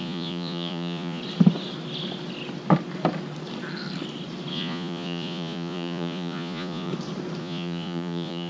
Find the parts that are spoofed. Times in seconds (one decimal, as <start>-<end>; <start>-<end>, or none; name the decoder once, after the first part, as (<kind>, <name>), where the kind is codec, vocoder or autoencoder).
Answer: 0.0-1.2 (vocoder, Vocos); 4.5-6.9; 7.4-8.5